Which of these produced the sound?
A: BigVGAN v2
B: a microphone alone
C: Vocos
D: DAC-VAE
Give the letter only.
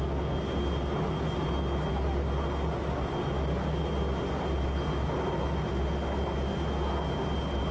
B